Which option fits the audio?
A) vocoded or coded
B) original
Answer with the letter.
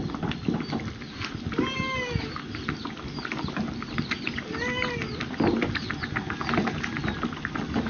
B